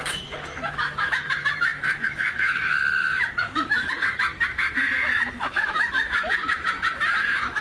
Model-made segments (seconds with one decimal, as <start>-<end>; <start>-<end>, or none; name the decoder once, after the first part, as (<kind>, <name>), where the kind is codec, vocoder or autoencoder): 0.0-7.6 (autoencoder, DAC-VAE)